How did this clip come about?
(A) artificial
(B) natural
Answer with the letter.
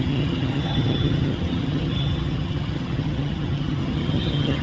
A